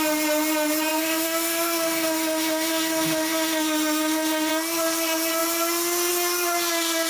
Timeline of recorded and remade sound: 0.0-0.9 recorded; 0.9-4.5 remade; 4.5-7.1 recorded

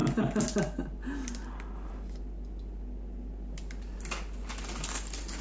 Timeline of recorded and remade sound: 0.0-5.4 recorded

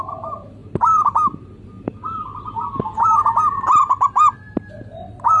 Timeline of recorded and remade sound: 0.0-5.4 recorded

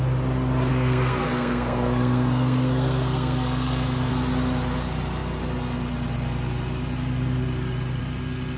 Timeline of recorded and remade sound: 0.0-0.7 recorded; 0.7-4.1 remade; 4.1-8.6 recorded

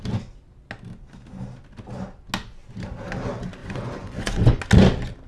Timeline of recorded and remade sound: 0.0-3.6 recorded; 3.6-4.6 remade; 4.6-5.3 recorded

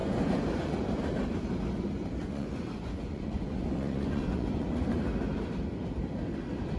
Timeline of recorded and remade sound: 0.0-0.7 remade; 0.7-2.2 recorded; 2.2-5.0 remade; 5.0-6.8 recorded

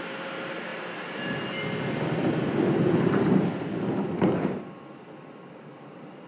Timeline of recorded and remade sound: 0.0-6.3 recorded

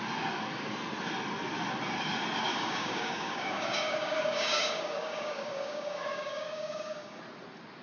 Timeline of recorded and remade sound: 0.0-2.5 recorded; 2.5-7.2 remade; 7.2-7.8 recorded